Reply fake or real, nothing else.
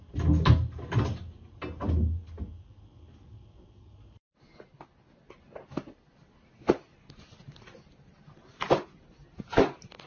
real